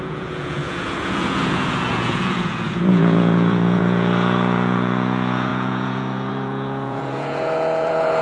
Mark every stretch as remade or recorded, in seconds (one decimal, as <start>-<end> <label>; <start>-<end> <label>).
0.0-8.2 remade